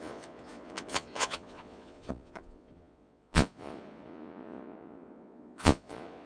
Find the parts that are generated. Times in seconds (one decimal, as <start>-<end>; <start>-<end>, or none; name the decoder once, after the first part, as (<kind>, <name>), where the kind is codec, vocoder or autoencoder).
0.0-6.3 (vocoder, Vocos)